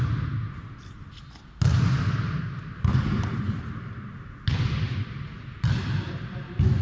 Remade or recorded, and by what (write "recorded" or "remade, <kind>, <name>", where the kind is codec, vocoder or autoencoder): recorded